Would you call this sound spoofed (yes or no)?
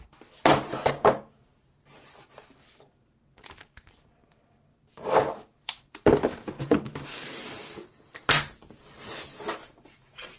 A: yes